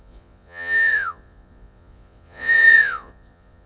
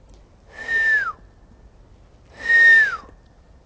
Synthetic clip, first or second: first